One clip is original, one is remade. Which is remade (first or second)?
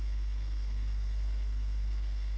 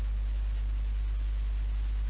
first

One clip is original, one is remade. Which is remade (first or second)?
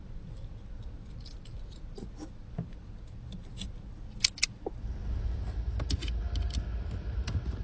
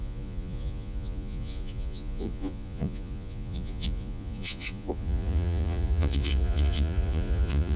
second